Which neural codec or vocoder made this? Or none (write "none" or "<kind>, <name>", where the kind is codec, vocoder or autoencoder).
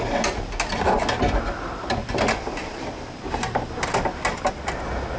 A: none